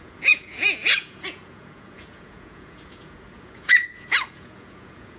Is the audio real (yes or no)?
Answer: no